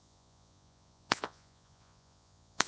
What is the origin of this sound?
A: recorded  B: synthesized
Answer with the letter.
B